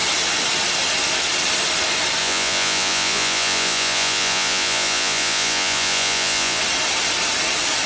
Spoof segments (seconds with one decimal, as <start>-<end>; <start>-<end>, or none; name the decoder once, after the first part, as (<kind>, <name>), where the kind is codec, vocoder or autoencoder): 2.2-6.6 (vocoder, Vocos)